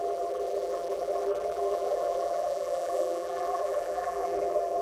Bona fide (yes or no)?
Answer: no